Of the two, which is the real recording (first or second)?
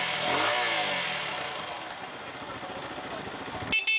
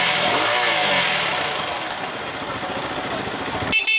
first